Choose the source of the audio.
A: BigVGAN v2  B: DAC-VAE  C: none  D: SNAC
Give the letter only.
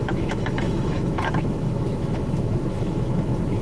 B